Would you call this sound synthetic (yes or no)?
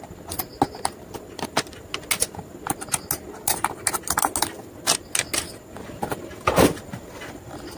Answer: no